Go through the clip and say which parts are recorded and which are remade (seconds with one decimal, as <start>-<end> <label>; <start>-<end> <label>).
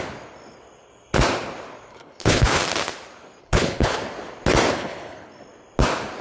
0.0-1.9 recorded; 1.9-2.6 remade; 2.6-3.4 recorded; 3.4-4.0 remade; 4.0-4.7 recorded; 4.7-5.3 remade; 5.3-6.2 recorded